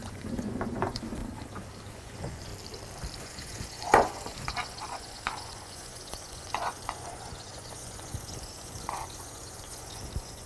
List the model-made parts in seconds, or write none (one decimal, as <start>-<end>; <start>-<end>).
0.0-1.2; 1.9-2.5; 3.2-10.5